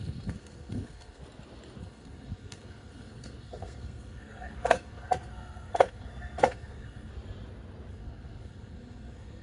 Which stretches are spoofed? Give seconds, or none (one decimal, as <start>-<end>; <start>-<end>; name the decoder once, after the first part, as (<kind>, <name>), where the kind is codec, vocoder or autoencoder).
0.0-1.2 (codec, SNAC); 1.8-7.1; 7.9-9.4